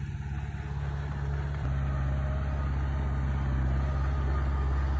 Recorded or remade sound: recorded